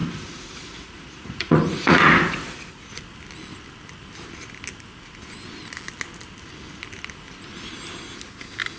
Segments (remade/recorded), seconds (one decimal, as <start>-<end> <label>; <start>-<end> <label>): 0.0-3.0 remade; 3.0-8.8 recorded